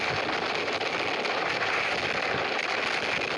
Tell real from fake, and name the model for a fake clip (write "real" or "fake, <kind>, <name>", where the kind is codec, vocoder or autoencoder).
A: real